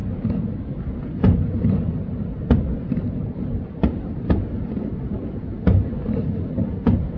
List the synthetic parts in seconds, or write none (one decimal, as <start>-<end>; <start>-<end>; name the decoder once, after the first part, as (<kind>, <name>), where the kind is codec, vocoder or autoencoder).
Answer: 0.0-7.2 (vocoder, BigVGAN v2)